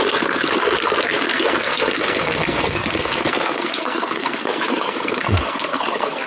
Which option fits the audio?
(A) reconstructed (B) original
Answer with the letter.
A